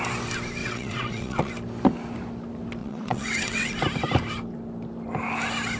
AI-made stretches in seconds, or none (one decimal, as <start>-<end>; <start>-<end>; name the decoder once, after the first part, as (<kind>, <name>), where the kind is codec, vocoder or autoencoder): 0.6-1.5 (vocoder, WaveNeXt); 2.8-3.7